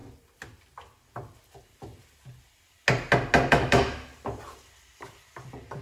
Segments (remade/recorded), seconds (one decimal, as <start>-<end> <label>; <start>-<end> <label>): 0.0-3.5 recorded; 3.5-4.1 remade; 4.1-5.8 recorded